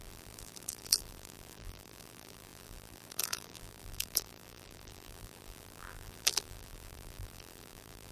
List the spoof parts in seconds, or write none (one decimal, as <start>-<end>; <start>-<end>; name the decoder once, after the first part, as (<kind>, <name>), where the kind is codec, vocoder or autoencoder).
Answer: 0.0-8.1 (vocoder, BigVGAN v2)